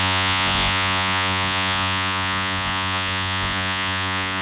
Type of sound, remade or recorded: remade